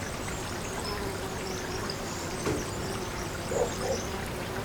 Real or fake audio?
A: real